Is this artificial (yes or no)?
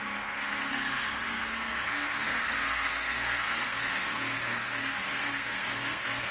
yes